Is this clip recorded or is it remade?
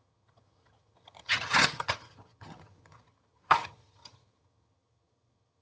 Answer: remade